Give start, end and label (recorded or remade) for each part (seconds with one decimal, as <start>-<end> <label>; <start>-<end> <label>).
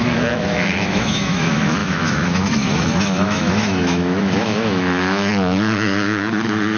0.0-6.8 remade